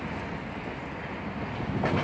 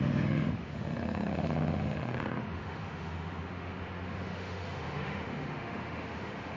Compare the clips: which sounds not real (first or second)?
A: second